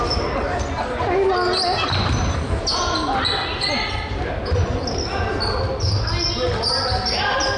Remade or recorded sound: recorded